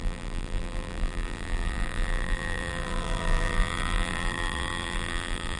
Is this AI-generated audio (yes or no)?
yes